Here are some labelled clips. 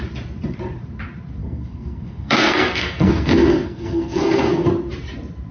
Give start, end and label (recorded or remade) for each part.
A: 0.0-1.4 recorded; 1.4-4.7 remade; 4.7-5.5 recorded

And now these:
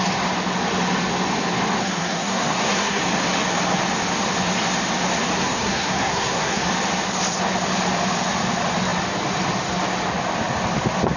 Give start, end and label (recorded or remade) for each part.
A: 0.0-1.8 recorded; 1.8-3.0 remade; 3.0-5.4 recorded; 5.4-6.7 remade; 6.7-11.2 recorded

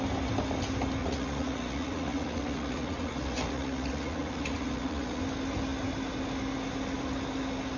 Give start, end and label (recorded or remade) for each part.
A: 0.0-1.0 recorded; 1.0-5.2 remade; 5.2-7.8 recorded

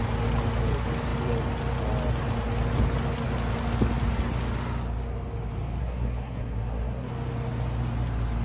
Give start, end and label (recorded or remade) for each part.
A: 0.0-5.8 recorded; 5.8-7.1 remade; 7.1-8.4 recorded

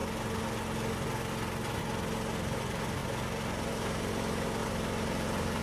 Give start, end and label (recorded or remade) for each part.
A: 0.0-3.0 recorded; 3.0-4.1 remade; 4.1-4.6 recorded; 4.6-5.6 remade

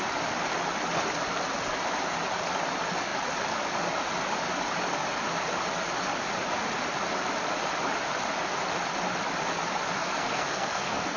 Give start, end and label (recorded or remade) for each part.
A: 0.0-10.0 recorded; 10.0-11.2 remade